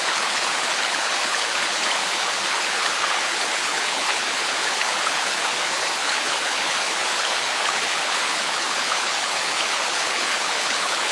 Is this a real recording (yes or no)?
no